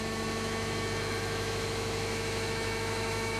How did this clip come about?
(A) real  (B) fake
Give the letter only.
B